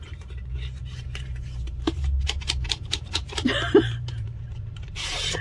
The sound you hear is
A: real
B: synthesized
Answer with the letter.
B